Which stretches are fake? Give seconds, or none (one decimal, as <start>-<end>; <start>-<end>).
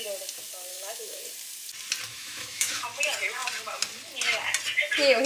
0.7-1.2; 2.1-2.8